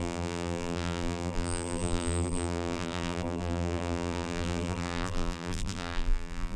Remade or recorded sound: remade